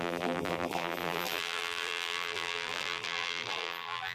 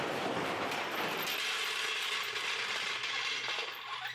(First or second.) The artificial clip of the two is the first